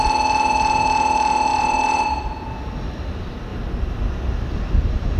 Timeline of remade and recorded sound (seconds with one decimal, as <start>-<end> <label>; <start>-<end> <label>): 0.0-1.5 recorded; 1.5-2.2 remade; 2.2-5.2 recorded